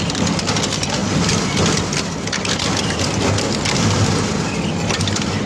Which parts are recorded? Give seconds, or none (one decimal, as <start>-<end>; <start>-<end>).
0.0-5.5

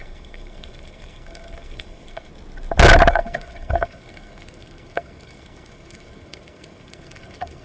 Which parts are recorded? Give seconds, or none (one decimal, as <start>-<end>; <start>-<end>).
2.3-3.1

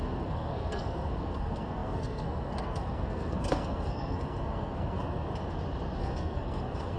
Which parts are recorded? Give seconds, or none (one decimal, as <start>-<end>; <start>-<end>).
5.3-6.0